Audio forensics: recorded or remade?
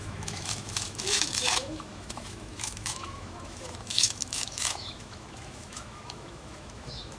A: remade